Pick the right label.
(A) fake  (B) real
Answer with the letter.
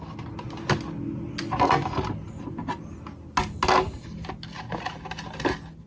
B